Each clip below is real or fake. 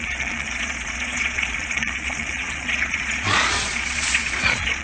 fake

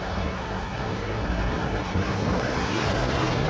fake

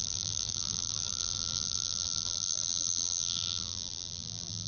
fake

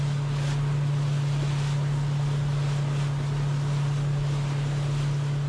real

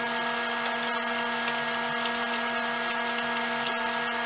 real